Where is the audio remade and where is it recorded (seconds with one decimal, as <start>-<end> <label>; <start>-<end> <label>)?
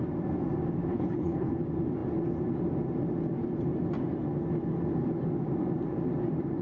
0.0-0.9 recorded; 0.9-1.5 remade; 1.5-6.6 recorded